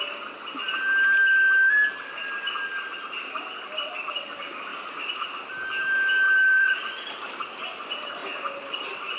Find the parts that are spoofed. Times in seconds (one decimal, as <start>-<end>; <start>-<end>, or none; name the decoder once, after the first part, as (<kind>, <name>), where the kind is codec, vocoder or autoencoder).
6.6-7.1 (vocoder, Vocos)